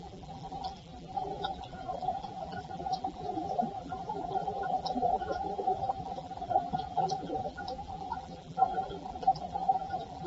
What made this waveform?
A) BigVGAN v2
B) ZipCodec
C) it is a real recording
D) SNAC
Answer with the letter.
A